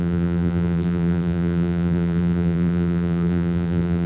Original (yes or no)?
no